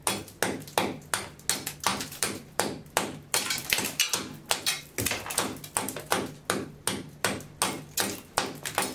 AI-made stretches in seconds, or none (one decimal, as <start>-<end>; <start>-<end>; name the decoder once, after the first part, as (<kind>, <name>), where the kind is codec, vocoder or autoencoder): 1.9-3.8 (vocoder, BigVGAN v2)

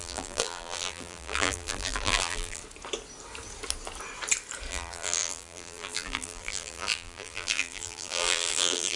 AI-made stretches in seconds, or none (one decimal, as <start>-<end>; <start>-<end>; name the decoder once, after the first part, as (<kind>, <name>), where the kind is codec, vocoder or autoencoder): 0.0-2.6 (vocoder, BigVGAN v2); 4.7-9.0

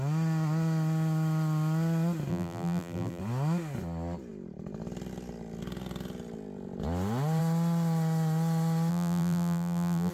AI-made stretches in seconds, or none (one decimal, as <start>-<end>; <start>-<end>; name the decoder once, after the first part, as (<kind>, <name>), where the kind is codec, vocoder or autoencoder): 2.3-3.2 (vocoder, BigVGAN v2); 8.9-10.1

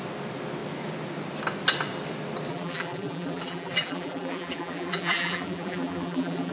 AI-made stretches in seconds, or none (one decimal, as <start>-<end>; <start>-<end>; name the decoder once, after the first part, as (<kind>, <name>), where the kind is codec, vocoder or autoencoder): 2.5-6.5 (vocoder, BigVGAN v2)

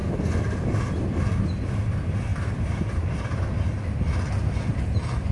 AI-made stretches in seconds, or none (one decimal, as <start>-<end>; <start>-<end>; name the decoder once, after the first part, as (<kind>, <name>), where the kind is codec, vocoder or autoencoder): 2.3-3.4 (vocoder, BigVGAN v2)

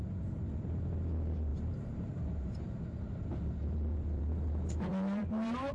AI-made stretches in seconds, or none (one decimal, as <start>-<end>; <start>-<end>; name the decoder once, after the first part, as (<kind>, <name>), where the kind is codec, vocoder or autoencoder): 1.5-2.7 (vocoder, BigVGAN v2); 3.9-5.7

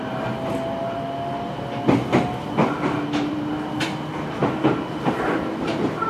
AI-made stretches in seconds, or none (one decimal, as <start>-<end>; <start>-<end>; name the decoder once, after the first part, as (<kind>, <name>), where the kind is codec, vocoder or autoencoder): 2.6-3.5 (vocoder, BigVGAN v2); 4.4-6.1

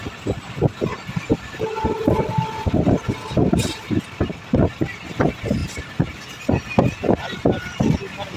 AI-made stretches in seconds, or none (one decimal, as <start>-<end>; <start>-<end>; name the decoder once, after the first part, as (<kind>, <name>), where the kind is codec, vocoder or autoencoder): 1.3-2.1 (vocoder, BigVGAN v2); 5.6-6.6